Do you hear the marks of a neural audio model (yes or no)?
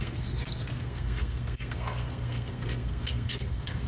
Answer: yes